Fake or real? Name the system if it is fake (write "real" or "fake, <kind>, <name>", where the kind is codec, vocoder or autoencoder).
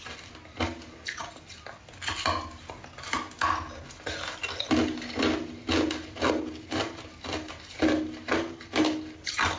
real